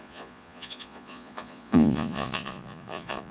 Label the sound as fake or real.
fake